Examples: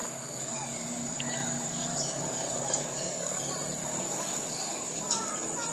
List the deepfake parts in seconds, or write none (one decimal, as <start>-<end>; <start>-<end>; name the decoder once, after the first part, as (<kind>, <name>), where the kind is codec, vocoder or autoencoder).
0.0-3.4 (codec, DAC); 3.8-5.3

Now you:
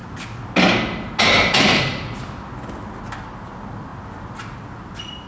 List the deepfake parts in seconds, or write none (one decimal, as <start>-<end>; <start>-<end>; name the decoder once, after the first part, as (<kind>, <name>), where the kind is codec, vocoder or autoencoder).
none

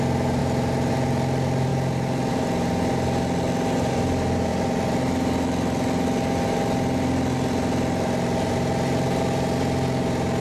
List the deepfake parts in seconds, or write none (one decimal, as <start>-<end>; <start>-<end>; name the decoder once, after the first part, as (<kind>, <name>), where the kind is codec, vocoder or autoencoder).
none